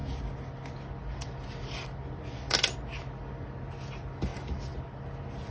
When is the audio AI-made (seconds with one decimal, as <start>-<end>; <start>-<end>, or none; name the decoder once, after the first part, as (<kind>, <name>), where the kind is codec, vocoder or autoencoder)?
none

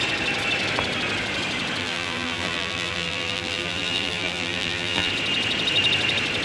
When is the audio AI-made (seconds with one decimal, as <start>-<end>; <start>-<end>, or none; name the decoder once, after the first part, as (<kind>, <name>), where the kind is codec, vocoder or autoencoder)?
1.8-5.1 (vocoder, BigVGAN v2)